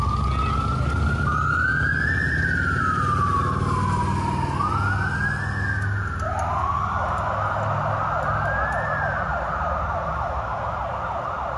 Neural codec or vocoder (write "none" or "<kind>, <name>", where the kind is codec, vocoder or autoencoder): none